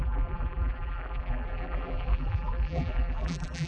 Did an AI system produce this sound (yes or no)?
yes